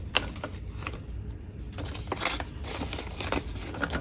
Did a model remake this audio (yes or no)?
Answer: no